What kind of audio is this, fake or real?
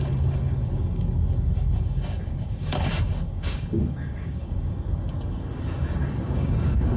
fake